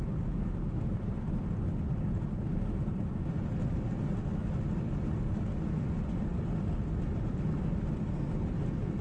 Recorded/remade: recorded